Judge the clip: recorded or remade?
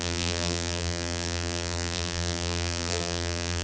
remade